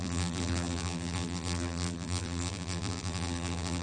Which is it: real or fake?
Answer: fake